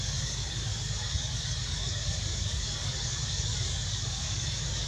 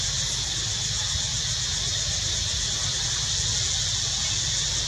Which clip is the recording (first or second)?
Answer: second